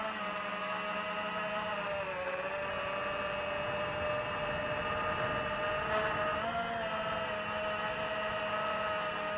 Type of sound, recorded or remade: recorded